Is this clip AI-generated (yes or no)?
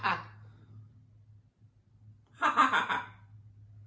no